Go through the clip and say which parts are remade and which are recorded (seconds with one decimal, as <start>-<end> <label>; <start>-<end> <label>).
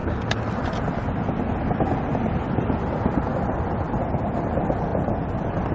0.0-3.3 recorded; 3.3-4.0 remade; 4.0-4.9 recorded; 4.9-5.7 remade